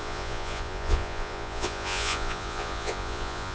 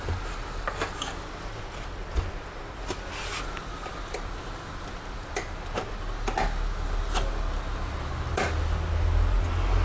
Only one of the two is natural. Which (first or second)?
second